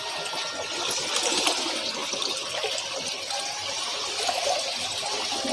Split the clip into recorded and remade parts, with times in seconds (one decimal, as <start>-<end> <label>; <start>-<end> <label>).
0.0-5.5 recorded